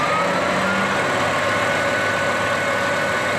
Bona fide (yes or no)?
yes